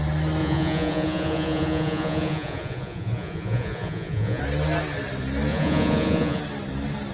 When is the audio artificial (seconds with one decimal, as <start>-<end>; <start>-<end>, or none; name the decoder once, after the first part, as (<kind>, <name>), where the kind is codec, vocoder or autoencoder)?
0.4-4.4 (vocoder, Vocos); 5.5-6.4